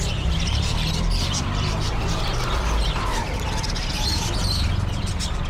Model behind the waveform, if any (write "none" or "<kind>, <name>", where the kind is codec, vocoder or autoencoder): none